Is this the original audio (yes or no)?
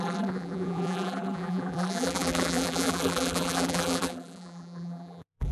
no